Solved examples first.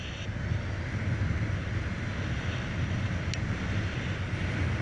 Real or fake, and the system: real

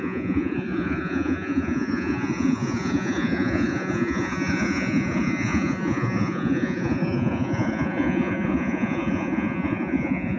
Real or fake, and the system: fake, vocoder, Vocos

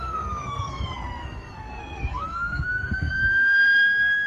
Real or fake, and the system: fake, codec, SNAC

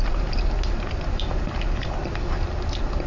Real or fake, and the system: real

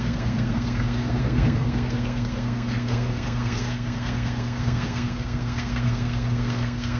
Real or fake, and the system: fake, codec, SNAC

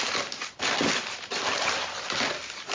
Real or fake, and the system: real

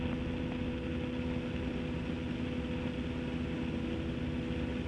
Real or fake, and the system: real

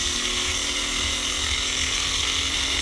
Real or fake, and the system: fake, codec, SNAC